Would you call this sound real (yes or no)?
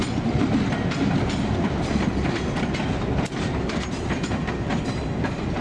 yes